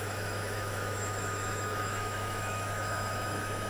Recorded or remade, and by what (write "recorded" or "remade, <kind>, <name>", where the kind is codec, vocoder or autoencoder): remade, autoencoder, DAC-VAE